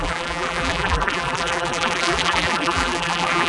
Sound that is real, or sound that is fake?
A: fake